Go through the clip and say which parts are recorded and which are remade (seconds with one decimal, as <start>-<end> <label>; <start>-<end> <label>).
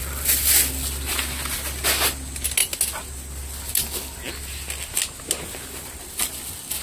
0.0-6.8 recorded